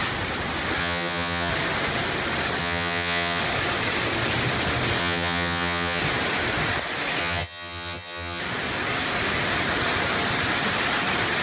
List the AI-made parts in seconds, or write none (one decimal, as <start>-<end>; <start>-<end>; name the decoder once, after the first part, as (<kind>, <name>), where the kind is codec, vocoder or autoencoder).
0.8-1.5 (vocoder, HiFi-GAN); 2.6-3.4; 5.0-6.0; 7.2-8.4